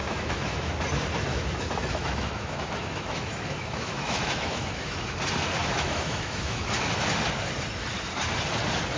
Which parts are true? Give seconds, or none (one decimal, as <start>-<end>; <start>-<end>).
0.7-1.3; 5.0-5.6; 6.7-9.0